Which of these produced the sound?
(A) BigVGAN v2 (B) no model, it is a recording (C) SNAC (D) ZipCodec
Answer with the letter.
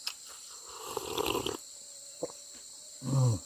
B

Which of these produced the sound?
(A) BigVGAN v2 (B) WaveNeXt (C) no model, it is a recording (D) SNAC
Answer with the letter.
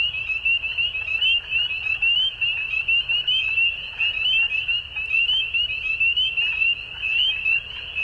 C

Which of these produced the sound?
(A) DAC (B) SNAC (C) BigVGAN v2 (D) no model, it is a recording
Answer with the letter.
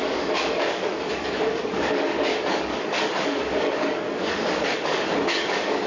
A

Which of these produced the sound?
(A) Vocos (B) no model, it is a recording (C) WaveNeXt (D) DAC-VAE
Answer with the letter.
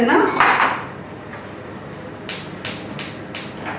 B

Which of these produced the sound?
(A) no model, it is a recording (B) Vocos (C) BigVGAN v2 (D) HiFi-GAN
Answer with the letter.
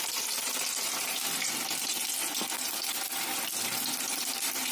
A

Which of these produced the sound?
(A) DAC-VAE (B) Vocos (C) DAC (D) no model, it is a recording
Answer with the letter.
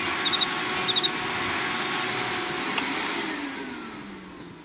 D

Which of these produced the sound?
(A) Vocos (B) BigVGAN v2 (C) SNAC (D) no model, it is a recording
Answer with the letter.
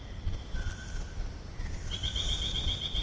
D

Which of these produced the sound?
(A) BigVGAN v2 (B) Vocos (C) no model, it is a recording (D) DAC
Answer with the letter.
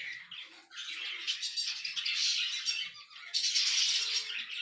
C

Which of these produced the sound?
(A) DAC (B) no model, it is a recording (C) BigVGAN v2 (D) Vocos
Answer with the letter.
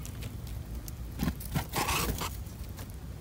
B